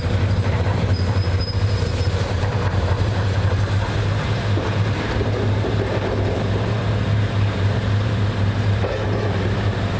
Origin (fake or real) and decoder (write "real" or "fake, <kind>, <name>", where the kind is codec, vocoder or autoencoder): fake, vocoder, BigVGAN v2